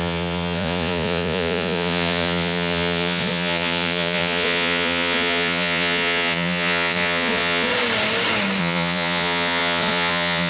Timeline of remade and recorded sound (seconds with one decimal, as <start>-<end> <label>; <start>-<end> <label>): 0.0-7.7 remade; 7.7-8.6 recorded; 8.6-10.5 remade